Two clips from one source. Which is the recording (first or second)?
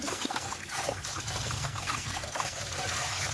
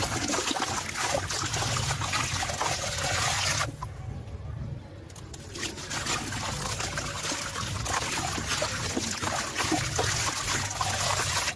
second